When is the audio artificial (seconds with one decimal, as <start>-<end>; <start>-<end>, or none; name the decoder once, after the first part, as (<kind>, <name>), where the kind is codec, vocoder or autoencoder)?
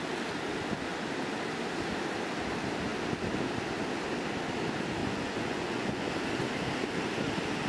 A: 5.0-6.1 (vocoder, Vocos)